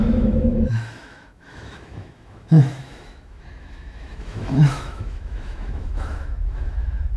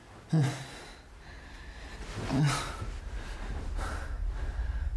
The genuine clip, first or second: second